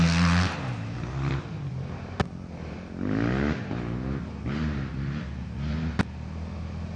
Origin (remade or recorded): recorded